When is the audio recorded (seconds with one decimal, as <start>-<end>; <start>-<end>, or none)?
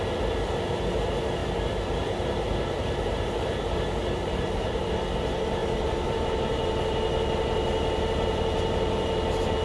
0.0-1.4; 4.8-5.6